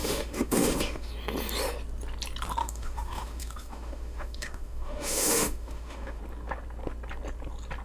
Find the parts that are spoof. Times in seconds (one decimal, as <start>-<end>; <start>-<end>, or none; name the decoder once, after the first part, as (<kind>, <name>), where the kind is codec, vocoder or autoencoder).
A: 0.0-1.1 (autoencoder, DAC-VAE); 2.6-6.2